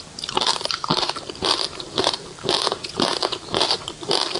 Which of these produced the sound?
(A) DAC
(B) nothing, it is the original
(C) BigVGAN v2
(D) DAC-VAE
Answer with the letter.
C